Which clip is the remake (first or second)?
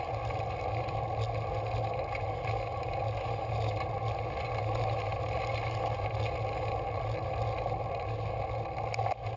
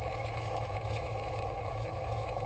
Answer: second